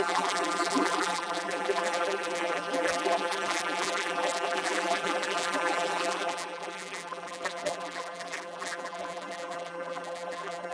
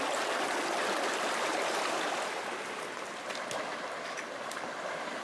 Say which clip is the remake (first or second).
first